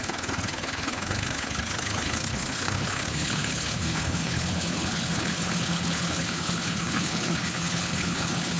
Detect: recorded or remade remade